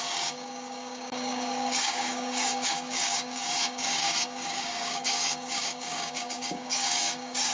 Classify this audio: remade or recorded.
remade